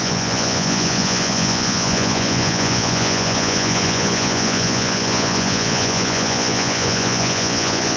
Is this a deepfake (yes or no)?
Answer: yes